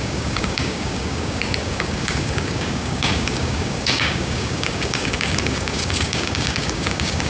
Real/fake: fake